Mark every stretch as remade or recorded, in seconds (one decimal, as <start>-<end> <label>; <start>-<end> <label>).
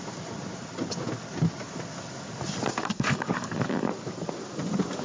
0.0-2.8 recorded; 2.8-3.9 remade; 3.9-5.0 recorded